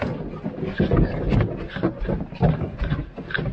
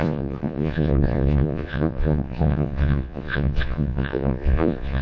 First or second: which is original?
first